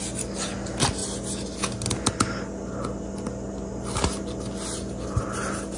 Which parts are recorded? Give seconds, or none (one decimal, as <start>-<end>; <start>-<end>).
0.0-5.8